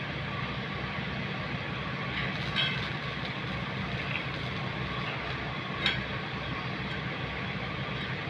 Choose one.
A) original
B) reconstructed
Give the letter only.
A